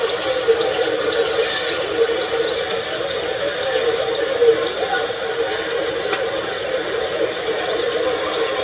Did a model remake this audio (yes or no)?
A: no